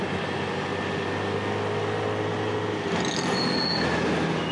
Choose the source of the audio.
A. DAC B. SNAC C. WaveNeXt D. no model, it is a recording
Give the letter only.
D